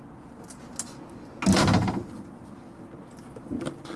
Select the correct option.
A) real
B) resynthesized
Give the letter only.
A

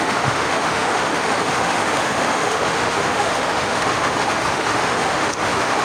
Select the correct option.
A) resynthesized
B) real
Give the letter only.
A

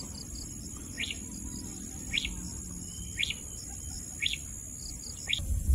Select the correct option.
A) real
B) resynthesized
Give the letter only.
A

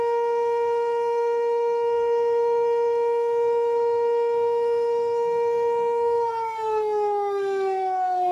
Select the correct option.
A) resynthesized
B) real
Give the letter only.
A